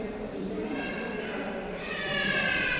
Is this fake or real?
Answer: fake